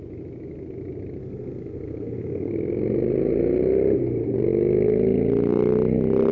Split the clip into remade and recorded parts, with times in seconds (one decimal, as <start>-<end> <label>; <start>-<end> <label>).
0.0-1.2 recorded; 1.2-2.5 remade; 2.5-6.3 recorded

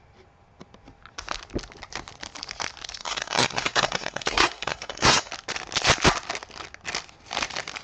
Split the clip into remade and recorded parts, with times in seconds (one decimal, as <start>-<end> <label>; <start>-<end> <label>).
0.0-3.0 recorded; 3.0-5.3 remade; 5.3-7.8 recorded

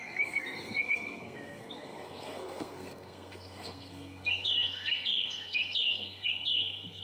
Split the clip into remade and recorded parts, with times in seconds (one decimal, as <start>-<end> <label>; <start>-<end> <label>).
0.0-7.0 remade

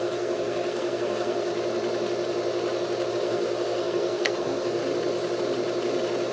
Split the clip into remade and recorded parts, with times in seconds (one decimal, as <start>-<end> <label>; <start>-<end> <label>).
0.0-1.5 remade; 1.5-3.1 recorded; 3.1-4.8 remade; 4.8-6.3 recorded